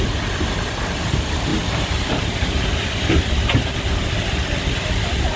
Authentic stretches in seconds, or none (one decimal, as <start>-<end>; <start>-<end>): 0.0-1.5; 2.8-5.4